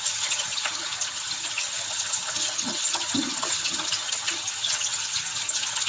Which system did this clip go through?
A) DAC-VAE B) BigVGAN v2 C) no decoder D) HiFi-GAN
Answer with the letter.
D